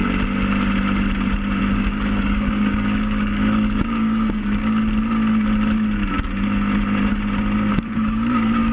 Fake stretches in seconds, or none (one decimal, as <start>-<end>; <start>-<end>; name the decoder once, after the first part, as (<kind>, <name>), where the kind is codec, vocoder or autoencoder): 1.6-4.6 (codec, DAC); 7.7-8.7